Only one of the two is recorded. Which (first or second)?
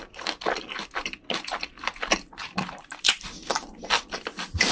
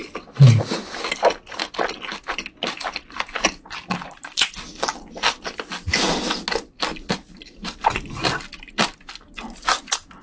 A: second